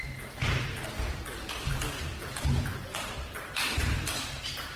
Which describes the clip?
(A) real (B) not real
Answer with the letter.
A